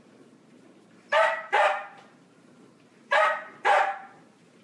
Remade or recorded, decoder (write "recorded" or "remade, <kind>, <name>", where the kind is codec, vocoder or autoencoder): recorded